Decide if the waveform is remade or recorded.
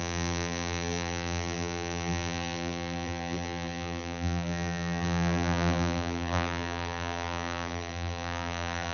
remade